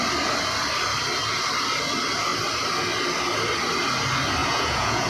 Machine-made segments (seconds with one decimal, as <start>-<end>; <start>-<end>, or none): 4.4-5.1